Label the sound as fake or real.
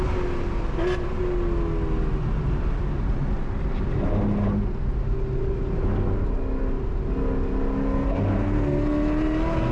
real